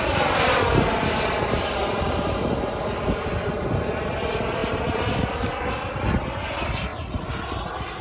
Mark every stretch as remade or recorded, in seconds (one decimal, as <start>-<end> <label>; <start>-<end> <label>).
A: 0.0-6.9 remade; 6.9-8.0 recorded